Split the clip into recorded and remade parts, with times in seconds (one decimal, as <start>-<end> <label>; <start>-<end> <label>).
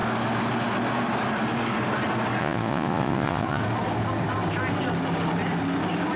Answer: 0.0-2.4 recorded; 2.4-3.6 remade; 3.6-6.2 recorded